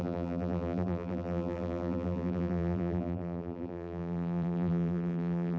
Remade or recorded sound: remade